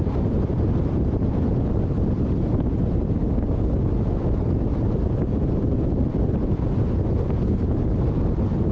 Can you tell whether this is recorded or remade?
recorded